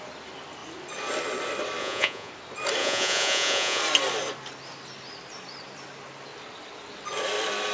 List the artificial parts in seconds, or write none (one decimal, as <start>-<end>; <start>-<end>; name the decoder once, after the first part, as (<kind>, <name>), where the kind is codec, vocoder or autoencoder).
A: 1.8-2.3 (vocoder, Vocos); 2.8-3.8